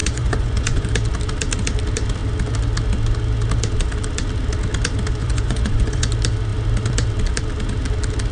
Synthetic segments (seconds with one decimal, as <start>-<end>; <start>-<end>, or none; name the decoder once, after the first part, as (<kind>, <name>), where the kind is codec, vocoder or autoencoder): 0.0-0.9 (vocoder, Vocos); 5.2-6.1